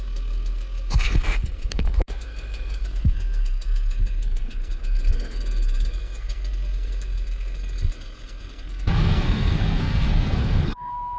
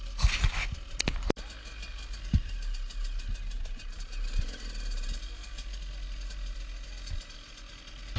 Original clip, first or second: second